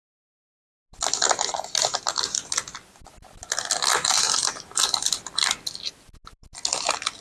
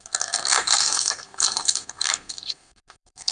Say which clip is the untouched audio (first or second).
first